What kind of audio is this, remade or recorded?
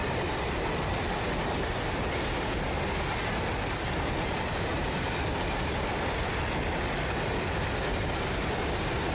recorded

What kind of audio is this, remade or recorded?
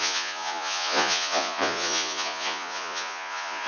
remade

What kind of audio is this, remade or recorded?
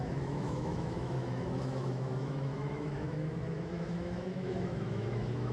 remade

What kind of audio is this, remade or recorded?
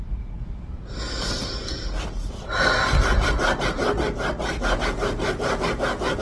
recorded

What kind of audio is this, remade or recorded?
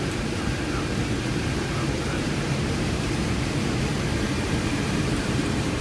remade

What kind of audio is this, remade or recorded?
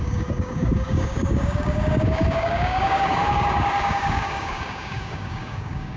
remade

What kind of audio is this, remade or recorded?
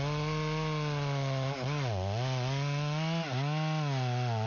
recorded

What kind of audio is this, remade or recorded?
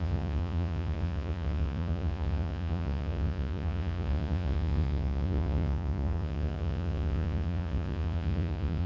remade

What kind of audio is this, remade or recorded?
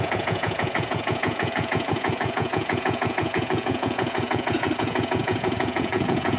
remade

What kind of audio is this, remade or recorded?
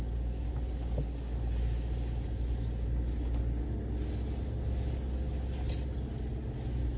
recorded